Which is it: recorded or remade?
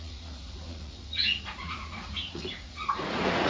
remade